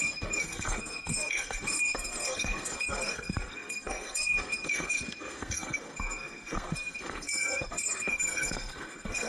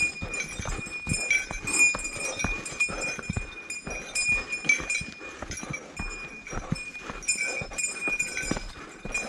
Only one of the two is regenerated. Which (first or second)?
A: first